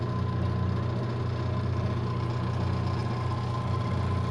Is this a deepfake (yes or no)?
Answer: no